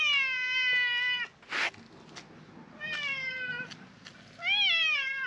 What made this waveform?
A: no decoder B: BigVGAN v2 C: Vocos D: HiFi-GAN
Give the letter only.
A